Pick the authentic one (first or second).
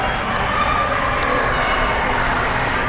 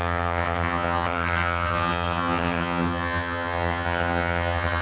first